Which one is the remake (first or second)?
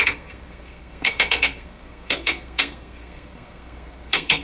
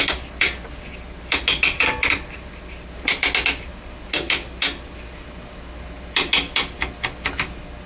first